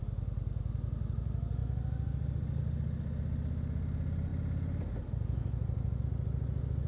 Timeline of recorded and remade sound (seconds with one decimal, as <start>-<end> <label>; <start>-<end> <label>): 0.0-6.9 recorded